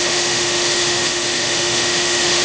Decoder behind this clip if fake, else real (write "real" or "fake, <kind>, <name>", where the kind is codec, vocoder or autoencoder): fake, autoencoder, DAC-VAE